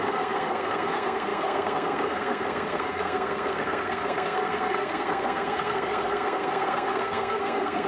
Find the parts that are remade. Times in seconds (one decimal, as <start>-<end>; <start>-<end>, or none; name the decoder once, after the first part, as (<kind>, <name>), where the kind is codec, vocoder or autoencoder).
0.0-7.9 (codec, SNAC)